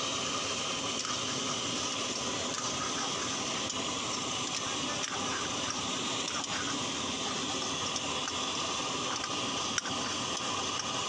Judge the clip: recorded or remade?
recorded